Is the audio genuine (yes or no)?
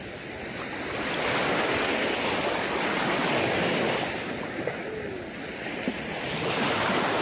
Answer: yes